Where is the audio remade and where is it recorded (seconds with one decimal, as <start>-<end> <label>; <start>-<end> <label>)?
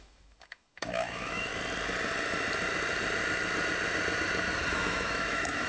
0.0-1.5 remade; 1.5-4.7 recorded; 4.7-5.7 remade